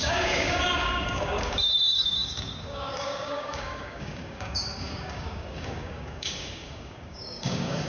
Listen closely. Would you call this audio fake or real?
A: fake